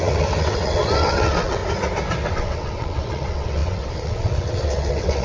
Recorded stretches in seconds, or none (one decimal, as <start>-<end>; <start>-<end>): 1.6-2.3